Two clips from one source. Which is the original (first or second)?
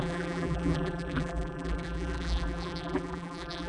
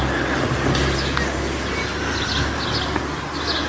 second